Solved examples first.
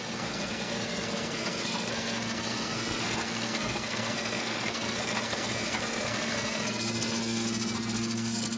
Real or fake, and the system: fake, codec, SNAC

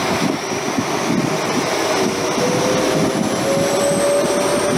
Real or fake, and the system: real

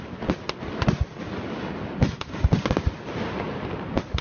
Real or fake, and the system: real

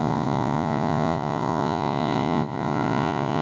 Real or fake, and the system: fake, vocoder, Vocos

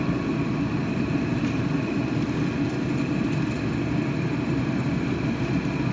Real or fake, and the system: real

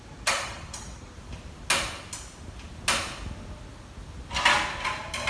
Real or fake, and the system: real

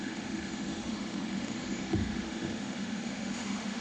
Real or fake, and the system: fake, autoencoder, DAC-VAE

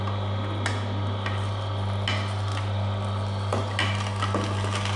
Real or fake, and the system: real